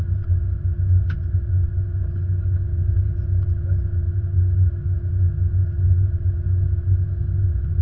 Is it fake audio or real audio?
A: real